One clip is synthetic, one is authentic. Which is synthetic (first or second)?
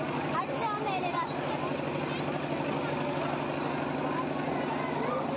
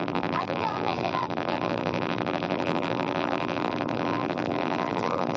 second